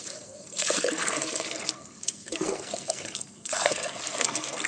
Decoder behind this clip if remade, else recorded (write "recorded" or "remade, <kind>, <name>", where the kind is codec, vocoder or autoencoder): remade, codec, SNAC